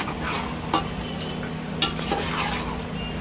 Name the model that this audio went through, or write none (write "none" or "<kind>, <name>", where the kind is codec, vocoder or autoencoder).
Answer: none